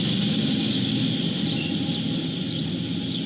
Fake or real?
real